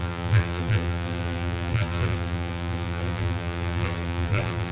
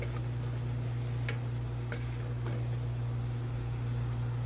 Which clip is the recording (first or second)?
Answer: second